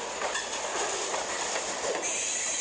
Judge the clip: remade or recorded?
recorded